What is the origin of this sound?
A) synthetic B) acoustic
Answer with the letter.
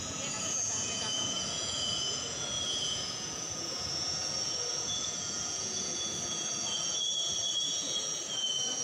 A